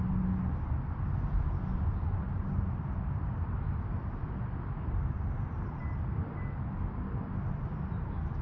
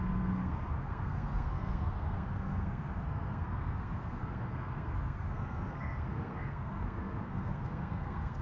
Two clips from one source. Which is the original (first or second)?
first